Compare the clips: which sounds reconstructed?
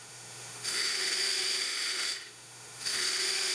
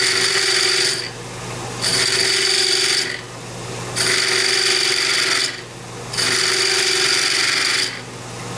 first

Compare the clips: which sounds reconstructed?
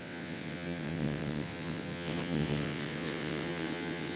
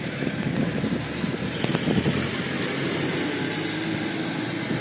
first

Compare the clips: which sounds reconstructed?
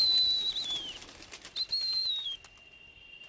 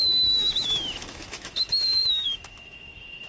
second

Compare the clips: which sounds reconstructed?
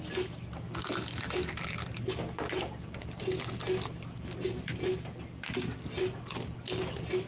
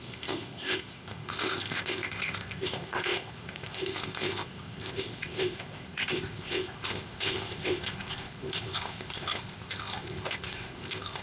second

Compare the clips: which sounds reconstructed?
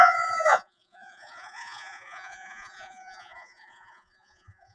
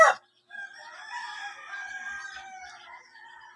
first